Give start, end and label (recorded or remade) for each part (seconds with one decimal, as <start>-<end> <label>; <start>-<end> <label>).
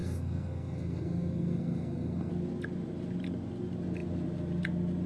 0.0-2.3 remade; 2.3-5.1 recorded